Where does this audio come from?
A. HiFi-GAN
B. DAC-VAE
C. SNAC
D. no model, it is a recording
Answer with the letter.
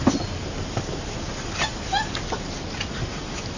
D